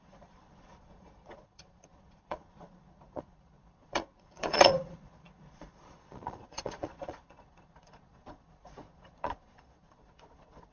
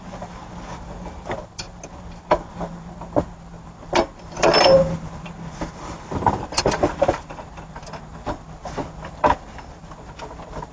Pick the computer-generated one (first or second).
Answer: first